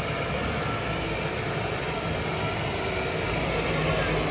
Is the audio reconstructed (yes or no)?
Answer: no